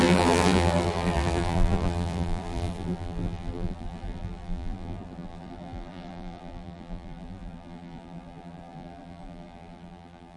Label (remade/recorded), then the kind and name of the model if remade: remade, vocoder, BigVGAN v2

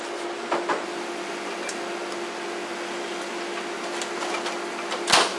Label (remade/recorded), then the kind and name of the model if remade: recorded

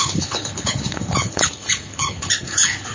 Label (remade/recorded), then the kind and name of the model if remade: remade, codec, HILCodec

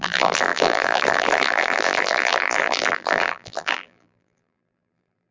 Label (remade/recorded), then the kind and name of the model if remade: remade, vocoder, BigVGAN v2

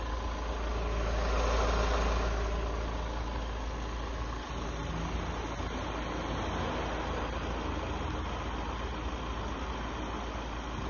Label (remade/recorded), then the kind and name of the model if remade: recorded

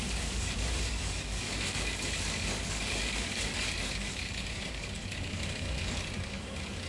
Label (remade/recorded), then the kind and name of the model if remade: remade, codec, DAC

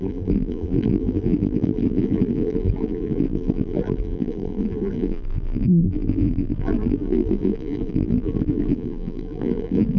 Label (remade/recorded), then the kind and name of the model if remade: remade, vocoder, BigVGAN v2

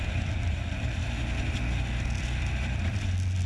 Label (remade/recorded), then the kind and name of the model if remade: remade, vocoder, BigVGAN v2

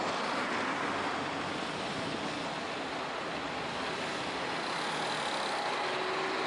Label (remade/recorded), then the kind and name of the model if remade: recorded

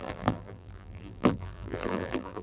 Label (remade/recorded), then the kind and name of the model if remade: remade, vocoder, BigVGAN v2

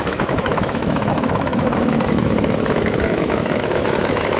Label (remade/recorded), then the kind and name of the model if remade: remade, autoencoder, DAC-VAE